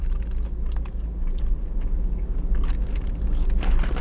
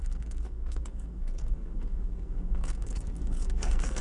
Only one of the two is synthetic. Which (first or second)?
second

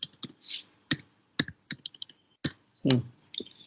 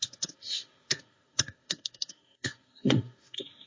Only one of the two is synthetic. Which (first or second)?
second